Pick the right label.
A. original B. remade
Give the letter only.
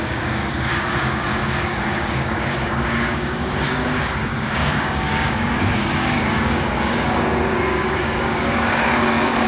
B